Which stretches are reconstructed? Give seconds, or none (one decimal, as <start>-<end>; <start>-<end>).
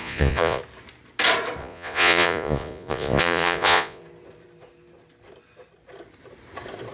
0.0-0.6; 1.6-4.0